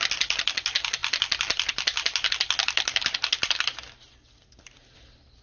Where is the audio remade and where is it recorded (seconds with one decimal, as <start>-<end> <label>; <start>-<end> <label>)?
0.0-1.0 recorded; 1.0-2.3 remade; 2.3-5.4 recorded